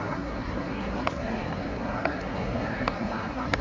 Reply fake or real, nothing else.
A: fake